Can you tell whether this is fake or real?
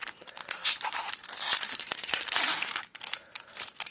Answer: fake